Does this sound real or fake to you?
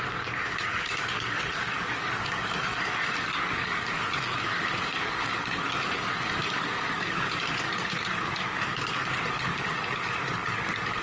fake